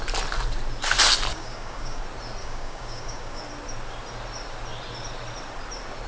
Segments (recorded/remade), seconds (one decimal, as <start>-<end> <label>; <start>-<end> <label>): 0.0-1.3 recorded; 1.3-2.0 remade; 2.0-2.4 recorded; 2.4-3.4 remade; 3.4-6.1 recorded